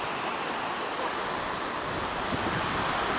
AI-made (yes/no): no